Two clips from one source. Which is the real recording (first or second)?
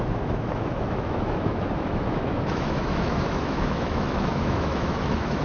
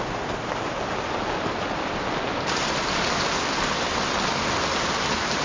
second